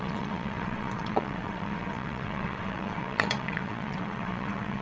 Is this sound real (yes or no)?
no